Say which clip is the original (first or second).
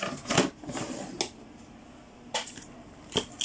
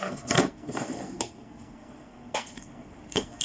first